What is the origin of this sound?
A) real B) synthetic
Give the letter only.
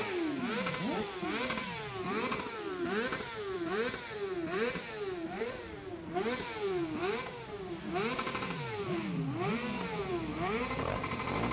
B